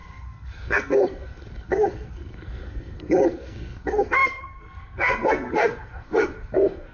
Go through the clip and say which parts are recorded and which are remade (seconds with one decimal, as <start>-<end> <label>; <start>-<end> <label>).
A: 0.0-6.9 remade